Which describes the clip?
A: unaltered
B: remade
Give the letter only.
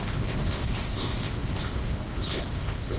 B